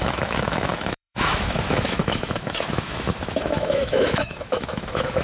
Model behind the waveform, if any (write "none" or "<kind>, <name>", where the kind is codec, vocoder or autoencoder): autoencoder, DAC-VAE